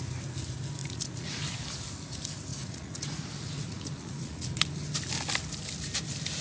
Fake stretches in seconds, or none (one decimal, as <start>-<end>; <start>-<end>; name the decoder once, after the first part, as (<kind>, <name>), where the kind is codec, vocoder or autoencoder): 0.8-1.4 (vocoder, Vocos); 2.5-4.6